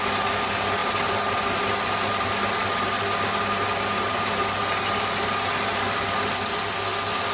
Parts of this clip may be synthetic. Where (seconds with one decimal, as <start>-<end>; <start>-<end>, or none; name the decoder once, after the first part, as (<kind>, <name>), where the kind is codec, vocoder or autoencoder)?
none